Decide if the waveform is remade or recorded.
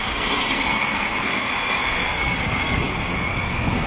remade